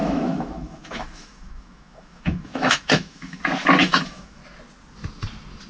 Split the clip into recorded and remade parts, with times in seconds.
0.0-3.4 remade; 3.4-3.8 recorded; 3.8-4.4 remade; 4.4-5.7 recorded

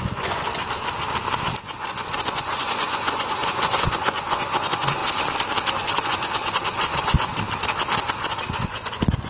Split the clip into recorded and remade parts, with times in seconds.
0.0-0.5 remade; 0.5-1.6 recorded; 1.6-5.0 remade; 5.0-5.8 recorded; 5.8-7.3 remade; 7.3-8.0 recorded; 8.0-9.3 remade

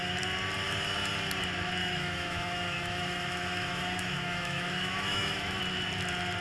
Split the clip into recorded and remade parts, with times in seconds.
0.0-1.8 recorded; 1.8-5.6 remade; 5.6-6.4 recorded

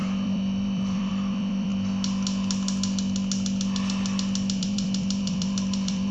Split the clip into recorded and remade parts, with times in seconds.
0.0-1.7 remade; 1.7-4.6 recorded; 4.6-6.1 remade